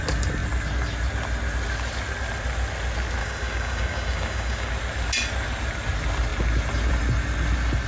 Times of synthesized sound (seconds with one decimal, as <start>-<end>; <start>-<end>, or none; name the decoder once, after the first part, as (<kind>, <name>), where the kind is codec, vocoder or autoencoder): 3.2-4.7 (codec, DAC)